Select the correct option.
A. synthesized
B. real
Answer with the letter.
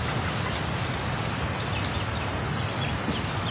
B